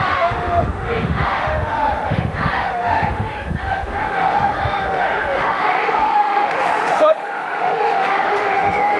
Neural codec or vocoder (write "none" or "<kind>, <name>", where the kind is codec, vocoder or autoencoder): autoencoder, DAC-VAE